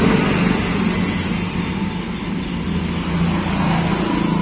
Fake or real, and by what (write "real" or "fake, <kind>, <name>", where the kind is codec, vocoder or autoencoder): real